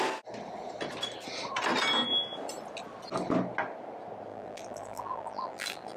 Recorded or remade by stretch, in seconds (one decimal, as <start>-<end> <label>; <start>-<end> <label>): 0.0-4.3 recorded; 4.3-6.0 remade

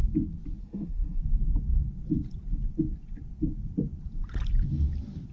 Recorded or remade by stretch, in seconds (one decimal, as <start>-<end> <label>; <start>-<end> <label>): 0.0-0.6 recorded; 0.6-1.2 remade; 1.2-5.3 recorded

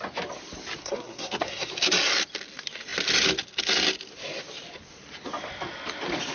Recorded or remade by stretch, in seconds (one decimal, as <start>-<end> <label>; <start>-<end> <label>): 0.0-0.8 recorded; 0.8-1.7 remade; 1.7-6.3 recorded